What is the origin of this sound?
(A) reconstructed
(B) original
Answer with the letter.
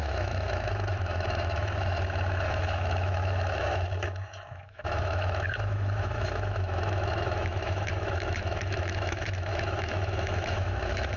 A